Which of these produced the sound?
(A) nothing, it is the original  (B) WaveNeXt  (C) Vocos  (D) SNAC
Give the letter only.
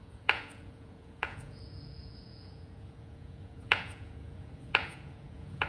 C